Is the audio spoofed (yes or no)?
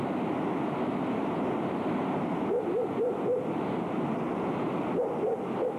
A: no